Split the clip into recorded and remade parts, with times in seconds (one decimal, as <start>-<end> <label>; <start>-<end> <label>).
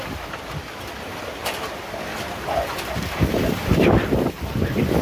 0.0-2.1 recorded; 2.1-4.1 remade; 4.1-5.0 recorded